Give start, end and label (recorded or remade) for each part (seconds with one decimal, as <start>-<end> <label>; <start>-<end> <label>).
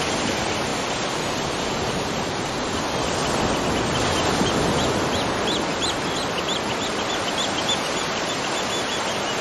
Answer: 0.0-9.4 recorded